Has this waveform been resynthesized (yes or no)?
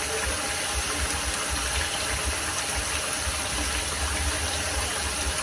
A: no